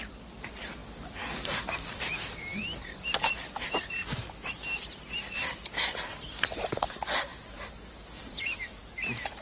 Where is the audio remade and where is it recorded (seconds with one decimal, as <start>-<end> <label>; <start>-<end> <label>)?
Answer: 0.0-9.4 recorded